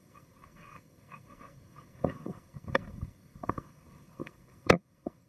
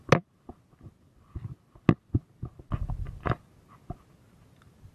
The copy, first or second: first